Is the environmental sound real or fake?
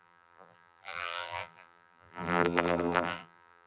fake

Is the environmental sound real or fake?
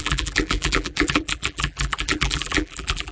fake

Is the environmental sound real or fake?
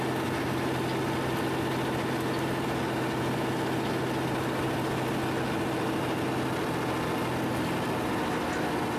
real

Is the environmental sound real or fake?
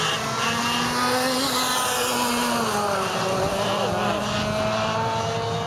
real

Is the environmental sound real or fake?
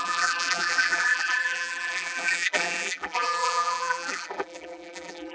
fake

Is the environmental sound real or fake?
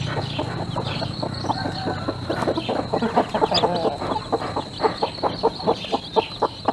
real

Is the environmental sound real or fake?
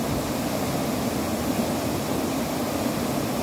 real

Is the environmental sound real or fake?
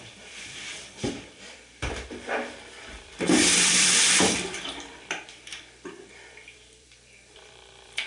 fake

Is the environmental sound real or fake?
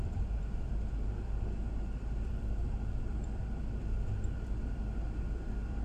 fake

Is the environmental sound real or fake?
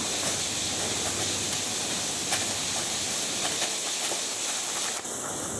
real